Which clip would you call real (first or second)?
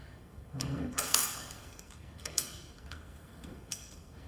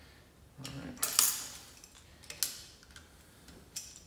second